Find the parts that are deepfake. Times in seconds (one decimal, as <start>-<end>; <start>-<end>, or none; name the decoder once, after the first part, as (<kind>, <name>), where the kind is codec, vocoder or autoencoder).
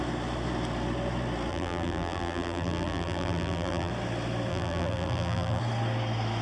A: 1.5-3.9 (vocoder, BigVGAN v2); 4.5-5.6